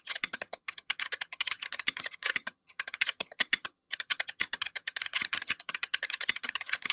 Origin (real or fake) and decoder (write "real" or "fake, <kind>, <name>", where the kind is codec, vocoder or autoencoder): fake, vocoder, HiFi-GAN